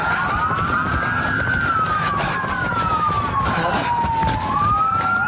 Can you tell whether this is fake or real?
real